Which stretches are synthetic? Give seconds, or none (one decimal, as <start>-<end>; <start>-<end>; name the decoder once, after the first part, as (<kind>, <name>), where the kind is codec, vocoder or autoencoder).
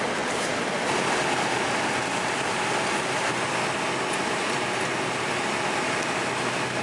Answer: none